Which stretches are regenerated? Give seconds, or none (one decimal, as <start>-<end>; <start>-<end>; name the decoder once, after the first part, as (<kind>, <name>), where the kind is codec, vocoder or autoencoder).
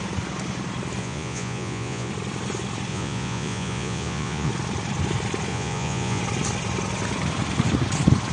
1.0-2.1 (vocoder, Vocos); 2.9-4.5; 5.5-6.2